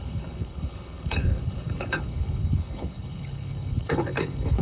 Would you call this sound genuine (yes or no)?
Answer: no